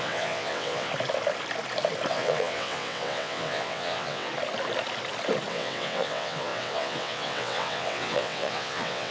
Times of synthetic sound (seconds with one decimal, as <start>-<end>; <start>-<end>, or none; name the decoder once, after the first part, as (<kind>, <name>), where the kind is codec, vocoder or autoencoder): 0.0-0.9 (vocoder, WaveNeXt); 2.1-4.3; 5.5-9.1